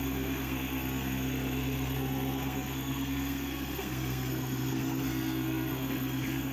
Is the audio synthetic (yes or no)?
yes